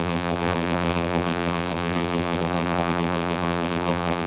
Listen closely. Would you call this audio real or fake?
fake